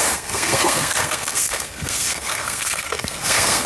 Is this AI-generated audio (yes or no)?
yes